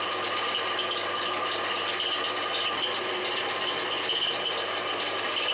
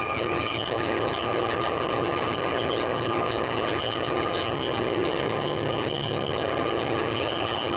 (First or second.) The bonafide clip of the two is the first